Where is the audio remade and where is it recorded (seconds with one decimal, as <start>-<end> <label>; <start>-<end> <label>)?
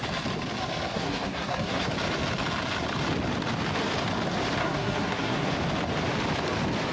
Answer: 0.0-0.9 recorded; 0.9-1.9 remade; 1.9-4.6 recorded; 4.6-5.5 remade; 5.5-6.9 recorded